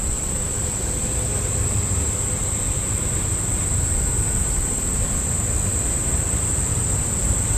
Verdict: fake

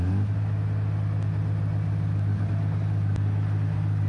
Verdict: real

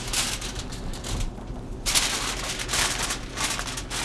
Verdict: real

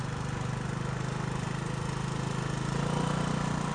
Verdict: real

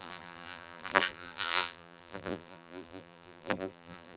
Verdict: fake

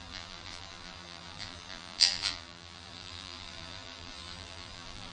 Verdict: fake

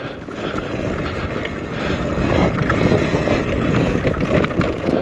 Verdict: real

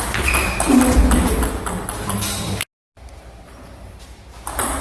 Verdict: real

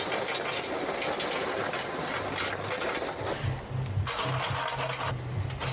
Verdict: real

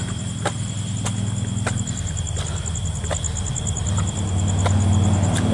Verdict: real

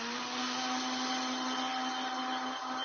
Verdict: real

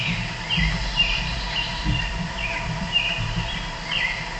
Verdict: fake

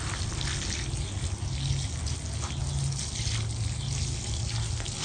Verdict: real